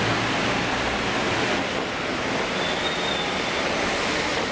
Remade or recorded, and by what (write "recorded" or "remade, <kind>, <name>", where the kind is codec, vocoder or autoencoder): recorded